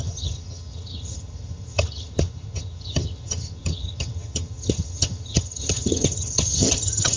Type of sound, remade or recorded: remade